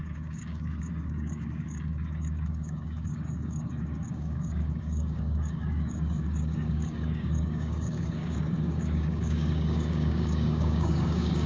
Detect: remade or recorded remade